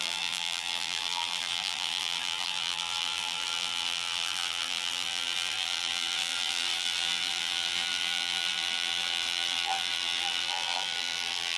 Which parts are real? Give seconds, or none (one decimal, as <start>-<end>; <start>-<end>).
none